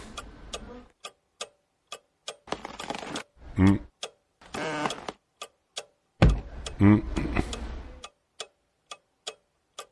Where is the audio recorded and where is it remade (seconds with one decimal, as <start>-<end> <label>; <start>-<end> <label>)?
0.0-9.9 recorded